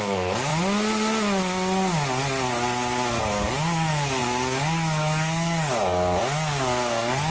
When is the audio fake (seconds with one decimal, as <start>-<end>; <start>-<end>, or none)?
0.0-0.5; 3.2-7.3